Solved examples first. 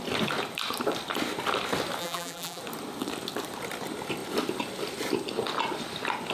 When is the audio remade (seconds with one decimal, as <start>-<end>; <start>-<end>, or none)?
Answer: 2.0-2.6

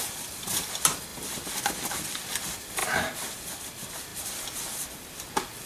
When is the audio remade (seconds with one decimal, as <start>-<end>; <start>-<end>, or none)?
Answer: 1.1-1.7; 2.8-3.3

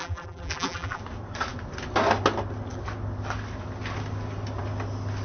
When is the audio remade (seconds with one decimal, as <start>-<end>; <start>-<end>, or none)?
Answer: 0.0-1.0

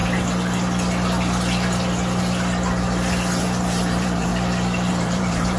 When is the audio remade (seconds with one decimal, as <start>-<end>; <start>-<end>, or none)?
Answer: 3.4-4.3; 4.9-5.6